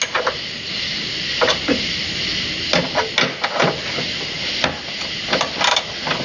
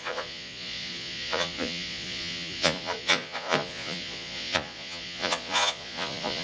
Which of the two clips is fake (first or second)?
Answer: second